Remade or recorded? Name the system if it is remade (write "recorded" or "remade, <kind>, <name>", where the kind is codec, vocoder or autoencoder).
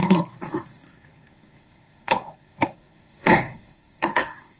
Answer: remade, codec, SNAC